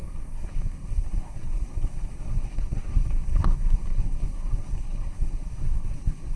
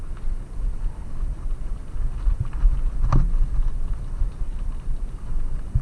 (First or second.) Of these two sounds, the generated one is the first